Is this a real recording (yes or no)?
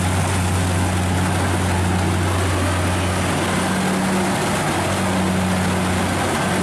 yes